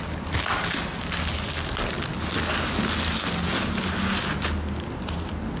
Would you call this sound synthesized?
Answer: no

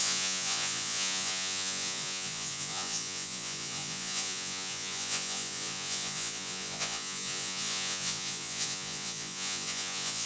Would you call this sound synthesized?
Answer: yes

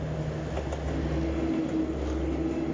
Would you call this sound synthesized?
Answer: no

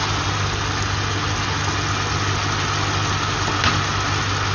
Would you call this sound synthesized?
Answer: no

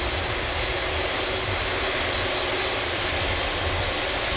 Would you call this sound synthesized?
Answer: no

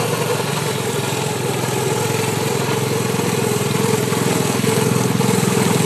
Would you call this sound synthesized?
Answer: no